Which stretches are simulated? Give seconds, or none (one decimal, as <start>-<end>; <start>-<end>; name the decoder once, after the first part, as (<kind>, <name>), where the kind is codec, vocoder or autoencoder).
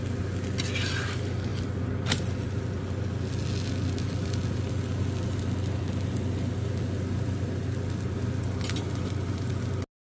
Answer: none